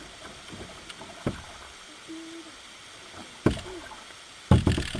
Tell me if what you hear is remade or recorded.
recorded